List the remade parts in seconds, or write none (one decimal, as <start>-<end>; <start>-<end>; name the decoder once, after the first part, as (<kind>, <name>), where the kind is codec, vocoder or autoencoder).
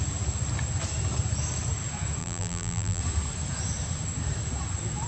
2.2-3.0 (vocoder, BigVGAN v2)